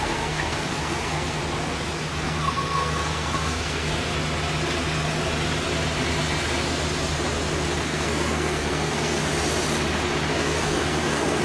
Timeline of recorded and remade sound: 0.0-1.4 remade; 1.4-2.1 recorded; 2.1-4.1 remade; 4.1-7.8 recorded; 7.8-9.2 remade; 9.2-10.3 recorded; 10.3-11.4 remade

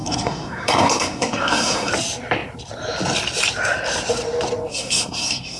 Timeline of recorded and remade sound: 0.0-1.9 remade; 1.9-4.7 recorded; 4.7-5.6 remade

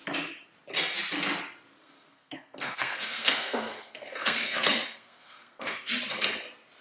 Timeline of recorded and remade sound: 0.0-1.8 recorded; 1.8-5.9 remade; 5.9-6.8 recorded

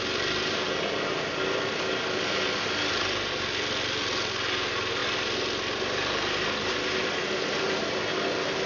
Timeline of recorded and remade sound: 0.0-8.7 recorded

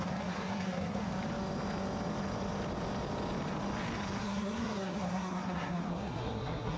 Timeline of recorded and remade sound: 0.0-1.1 remade; 1.1-4.2 recorded; 4.2-6.8 remade